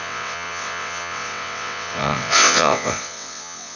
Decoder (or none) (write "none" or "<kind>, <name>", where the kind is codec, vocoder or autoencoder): vocoder, WaveNeXt